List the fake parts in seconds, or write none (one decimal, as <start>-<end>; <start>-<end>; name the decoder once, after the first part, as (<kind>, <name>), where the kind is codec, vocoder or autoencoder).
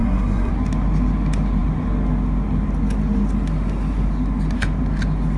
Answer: 0.0-0.5 (codec, SNAC)